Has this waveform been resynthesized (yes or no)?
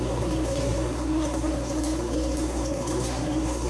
yes